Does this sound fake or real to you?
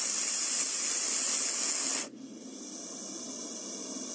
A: real